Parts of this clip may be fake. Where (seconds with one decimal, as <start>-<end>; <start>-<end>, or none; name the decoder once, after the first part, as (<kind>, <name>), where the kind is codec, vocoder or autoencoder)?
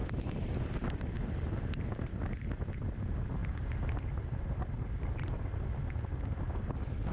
none